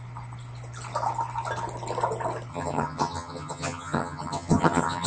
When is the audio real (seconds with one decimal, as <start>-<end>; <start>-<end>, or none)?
0.0-2.5